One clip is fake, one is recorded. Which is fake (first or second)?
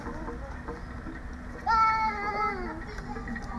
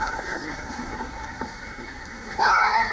second